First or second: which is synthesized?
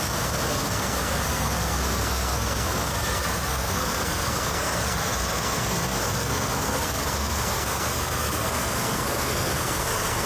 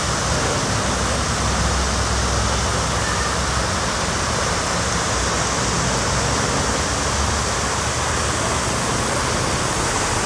first